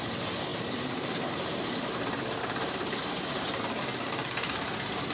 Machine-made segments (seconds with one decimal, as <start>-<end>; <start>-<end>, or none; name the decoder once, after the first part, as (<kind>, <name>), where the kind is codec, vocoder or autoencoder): 0.5-3.6 (vocoder, BigVGAN v2)